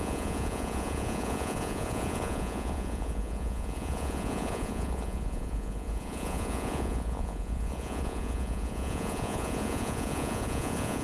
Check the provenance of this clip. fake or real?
fake